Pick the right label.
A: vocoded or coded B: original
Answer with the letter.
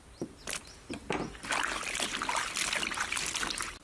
B